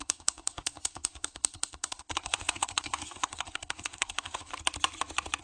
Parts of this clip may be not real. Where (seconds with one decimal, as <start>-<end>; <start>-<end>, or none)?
0.0-4.5